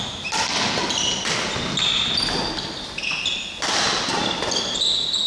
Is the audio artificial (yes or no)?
no